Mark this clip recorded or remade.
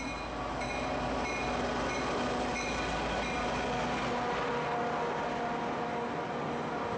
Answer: recorded